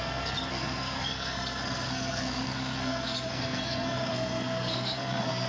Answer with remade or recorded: remade